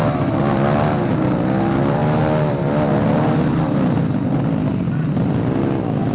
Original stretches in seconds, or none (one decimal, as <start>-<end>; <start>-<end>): 0.0-6.1